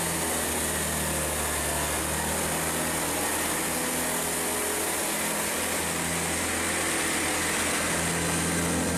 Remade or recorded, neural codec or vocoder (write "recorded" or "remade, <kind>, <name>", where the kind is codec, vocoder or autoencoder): recorded